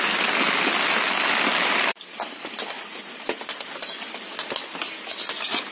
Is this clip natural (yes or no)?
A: yes